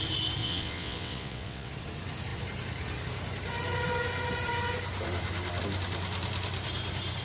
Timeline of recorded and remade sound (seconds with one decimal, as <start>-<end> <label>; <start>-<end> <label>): 0.0-0.4 recorded; 0.4-1.7 remade; 1.7-7.2 recorded